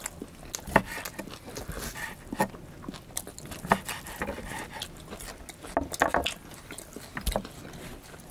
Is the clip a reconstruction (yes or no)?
no